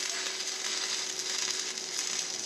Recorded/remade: recorded